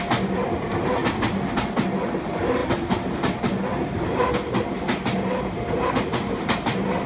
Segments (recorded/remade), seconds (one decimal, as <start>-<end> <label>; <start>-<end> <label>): 0.0-7.1 recorded